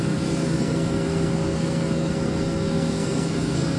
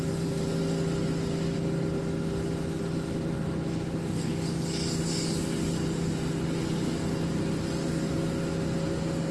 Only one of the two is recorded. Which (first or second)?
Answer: second